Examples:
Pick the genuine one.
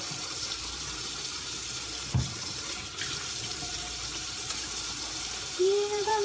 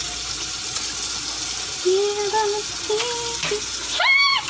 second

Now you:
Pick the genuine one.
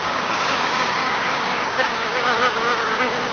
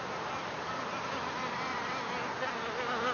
second